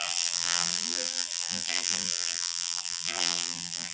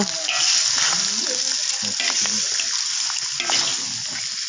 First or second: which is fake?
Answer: first